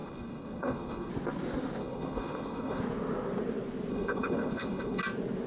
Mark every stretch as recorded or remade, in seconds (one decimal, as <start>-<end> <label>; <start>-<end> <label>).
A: 0.0-1.1 remade; 1.1-1.8 recorded; 1.8-2.8 remade; 2.8-3.9 recorded; 3.9-5.0 remade; 5.0-5.5 recorded